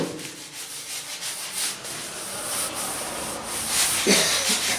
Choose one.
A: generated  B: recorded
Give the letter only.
B